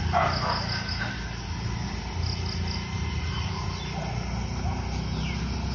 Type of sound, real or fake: real